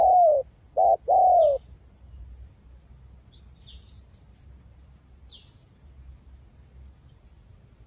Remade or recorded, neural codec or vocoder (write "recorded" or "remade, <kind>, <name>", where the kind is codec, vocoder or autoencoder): recorded